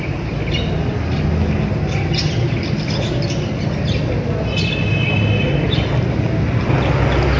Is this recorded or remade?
recorded